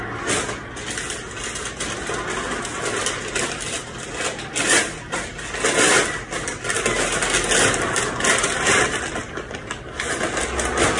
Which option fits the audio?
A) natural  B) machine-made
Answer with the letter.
A